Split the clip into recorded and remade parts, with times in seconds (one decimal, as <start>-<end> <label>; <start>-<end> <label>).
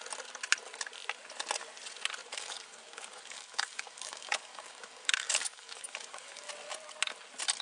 0.0-2.2 recorded; 2.2-6.5 remade; 6.5-7.6 recorded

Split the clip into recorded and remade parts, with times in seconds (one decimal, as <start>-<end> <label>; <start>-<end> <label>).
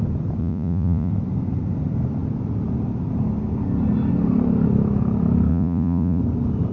0.0-0.4 recorded; 0.4-1.1 remade; 1.1-5.5 recorded; 5.5-6.2 remade; 6.2-6.7 recorded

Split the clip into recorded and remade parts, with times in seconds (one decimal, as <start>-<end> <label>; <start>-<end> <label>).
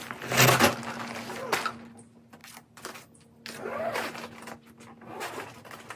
0.0-6.0 recorded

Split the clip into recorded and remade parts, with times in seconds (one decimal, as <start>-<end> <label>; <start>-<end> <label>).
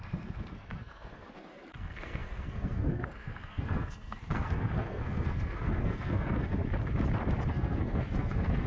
0.0-6.6 remade; 6.6-7.5 recorded; 7.5-8.7 remade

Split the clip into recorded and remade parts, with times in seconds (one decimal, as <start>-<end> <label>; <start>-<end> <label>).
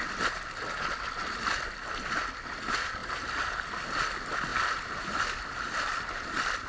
0.0-3.0 recorded; 3.0-4.0 remade; 4.0-4.5 recorded; 4.5-5.9 remade; 5.9-6.7 recorded